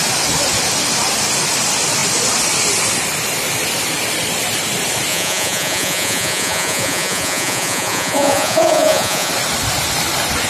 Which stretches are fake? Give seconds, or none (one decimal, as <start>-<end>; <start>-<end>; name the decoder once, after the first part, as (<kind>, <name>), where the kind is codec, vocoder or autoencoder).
5.1-9.3 (vocoder, Vocos)